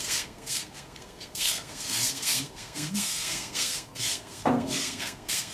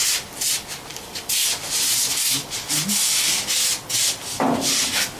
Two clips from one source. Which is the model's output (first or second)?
first